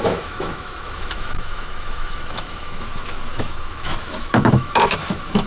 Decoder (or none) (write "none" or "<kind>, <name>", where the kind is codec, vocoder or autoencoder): autoencoder, DAC-VAE